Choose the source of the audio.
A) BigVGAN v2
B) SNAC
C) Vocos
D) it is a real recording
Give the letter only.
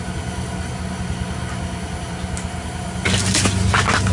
D